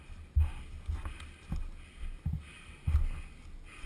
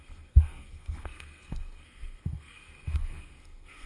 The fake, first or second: second